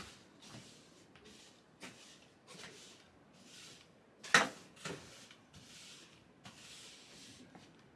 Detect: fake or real real